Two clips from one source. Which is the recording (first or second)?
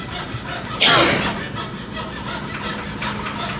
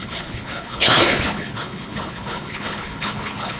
first